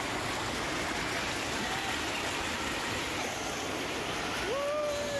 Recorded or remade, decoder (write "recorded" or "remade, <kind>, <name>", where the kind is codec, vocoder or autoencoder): recorded